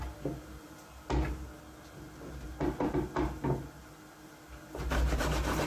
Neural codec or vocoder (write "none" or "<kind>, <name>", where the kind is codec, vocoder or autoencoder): none